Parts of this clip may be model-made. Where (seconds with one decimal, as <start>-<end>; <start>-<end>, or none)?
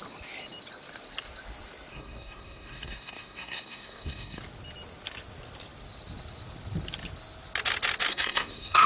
1.9-4.4; 8.1-8.9